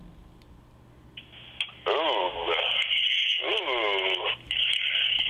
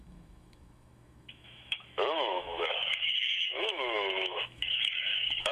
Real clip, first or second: first